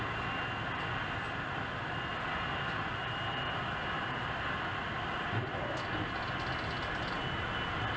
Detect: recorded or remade recorded